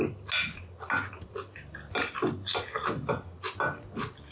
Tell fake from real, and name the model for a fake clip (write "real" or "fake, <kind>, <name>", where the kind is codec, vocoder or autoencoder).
real